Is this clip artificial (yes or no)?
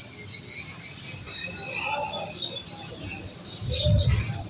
no